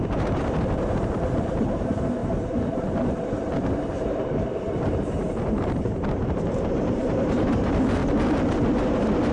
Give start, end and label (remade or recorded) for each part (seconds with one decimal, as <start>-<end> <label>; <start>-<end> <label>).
0.0-8.0 remade; 8.0-8.7 recorded; 8.7-9.3 remade